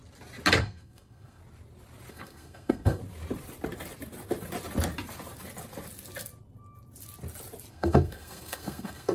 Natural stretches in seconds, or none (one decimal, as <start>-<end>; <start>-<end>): 0.0-0.6; 1.4-2.1; 3.0-7.7